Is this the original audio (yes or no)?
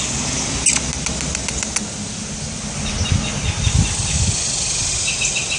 yes